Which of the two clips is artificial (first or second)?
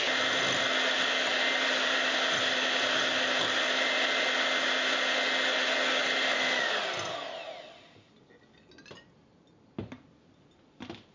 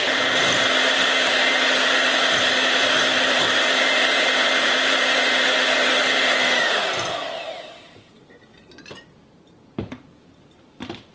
second